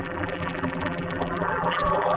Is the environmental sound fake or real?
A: fake